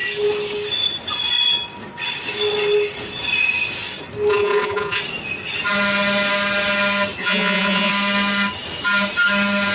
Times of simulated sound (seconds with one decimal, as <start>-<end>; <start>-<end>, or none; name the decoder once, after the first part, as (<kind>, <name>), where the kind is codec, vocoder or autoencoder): 4.3-5.0 (vocoder, Vocos); 7.2-7.9